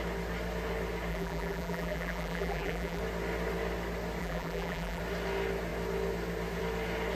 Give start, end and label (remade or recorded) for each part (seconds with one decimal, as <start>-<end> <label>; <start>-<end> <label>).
0.0-1.1 recorded; 1.1-3.0 remade; 3.0-4.2 recorded; 4.2-5.0 remade; 5.0-7.2 recorded